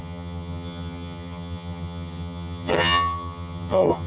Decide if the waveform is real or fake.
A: fake